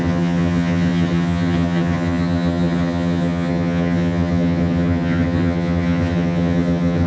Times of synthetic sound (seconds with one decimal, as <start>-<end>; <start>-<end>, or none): 0.0-7.1